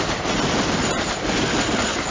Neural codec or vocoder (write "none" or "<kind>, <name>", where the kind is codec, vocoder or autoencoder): none